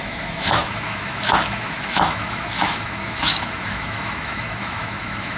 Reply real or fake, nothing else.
fake